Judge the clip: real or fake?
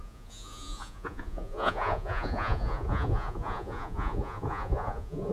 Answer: fake